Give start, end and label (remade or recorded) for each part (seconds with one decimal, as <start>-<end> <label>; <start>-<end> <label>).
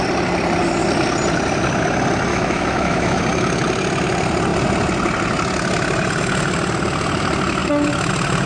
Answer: 0.0-2.3 recorded; 2.3-3.2 remade; 3.2-8.5 recorded